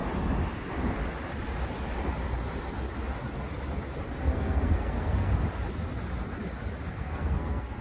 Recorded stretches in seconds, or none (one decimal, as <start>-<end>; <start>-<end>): 0.0-4.2; 5.3-6.9